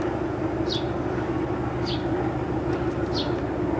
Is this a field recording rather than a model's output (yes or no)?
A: yes